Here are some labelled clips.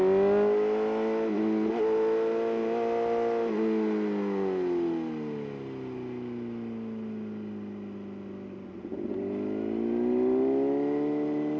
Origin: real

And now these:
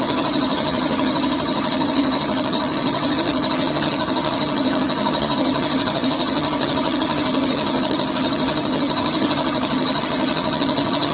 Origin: fake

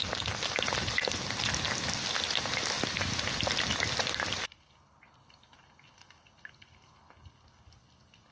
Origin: real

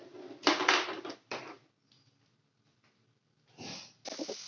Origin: real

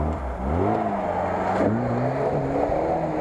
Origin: real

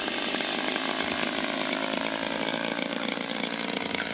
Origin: fake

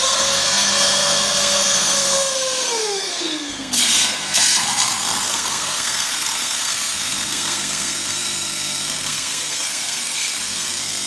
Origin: fake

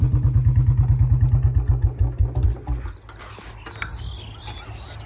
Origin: real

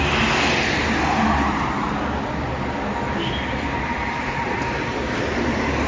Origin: real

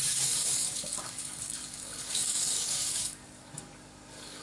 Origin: fake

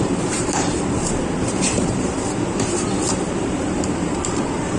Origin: fake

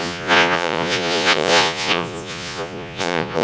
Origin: fake